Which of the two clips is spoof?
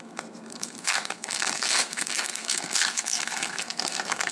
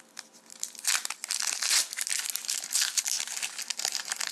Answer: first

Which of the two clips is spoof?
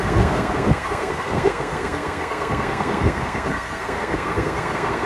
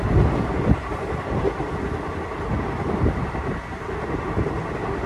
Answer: first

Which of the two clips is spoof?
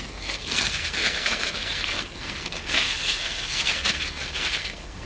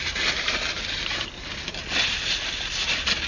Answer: first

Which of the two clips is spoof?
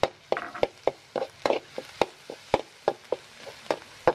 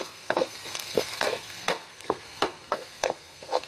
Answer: second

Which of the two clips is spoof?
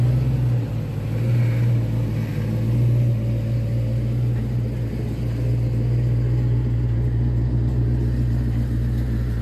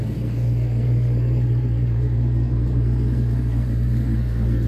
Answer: second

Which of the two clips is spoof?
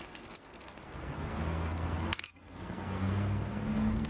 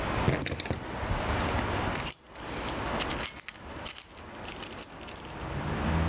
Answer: first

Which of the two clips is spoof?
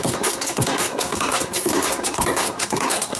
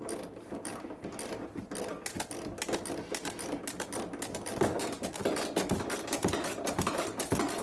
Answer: first